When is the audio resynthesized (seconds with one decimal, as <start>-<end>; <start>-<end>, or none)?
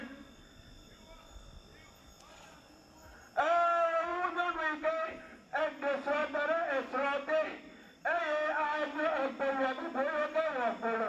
4.1-5.6